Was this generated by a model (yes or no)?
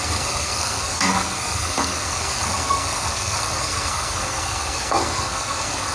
yes